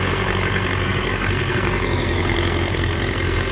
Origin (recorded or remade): remade